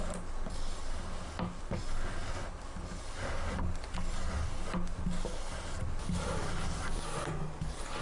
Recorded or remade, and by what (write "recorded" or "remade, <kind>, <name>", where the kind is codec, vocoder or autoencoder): recorded